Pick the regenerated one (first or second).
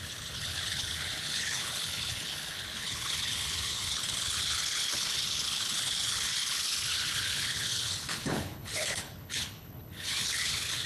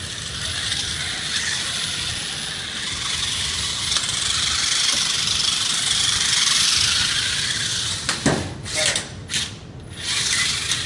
first